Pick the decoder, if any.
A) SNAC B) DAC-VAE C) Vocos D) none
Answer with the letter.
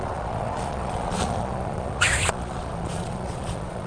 C